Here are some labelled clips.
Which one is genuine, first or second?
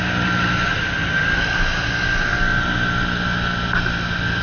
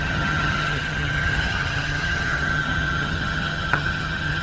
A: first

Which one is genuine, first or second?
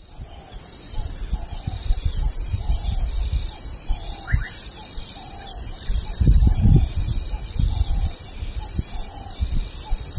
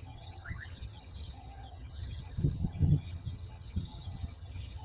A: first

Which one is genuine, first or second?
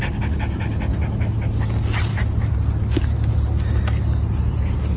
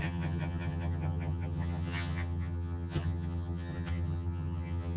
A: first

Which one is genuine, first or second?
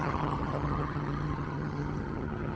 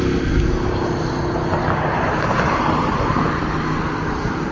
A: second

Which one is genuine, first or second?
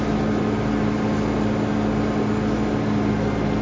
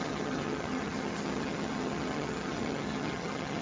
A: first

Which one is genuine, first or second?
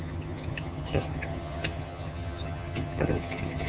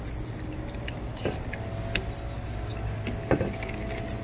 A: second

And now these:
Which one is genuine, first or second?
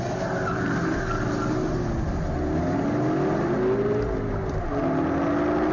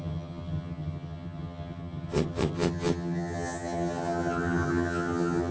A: first